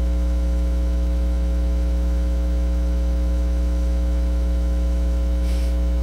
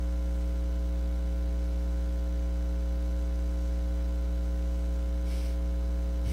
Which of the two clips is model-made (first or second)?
first